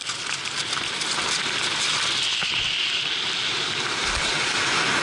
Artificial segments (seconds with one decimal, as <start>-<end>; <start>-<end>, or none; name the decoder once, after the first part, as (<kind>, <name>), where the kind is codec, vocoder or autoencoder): 0.0-3.0 (vocoder, BigVGAN v2)